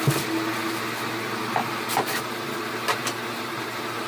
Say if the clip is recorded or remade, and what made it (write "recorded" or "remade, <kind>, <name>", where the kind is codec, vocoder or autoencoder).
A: recorded